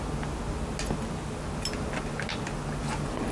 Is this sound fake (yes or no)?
no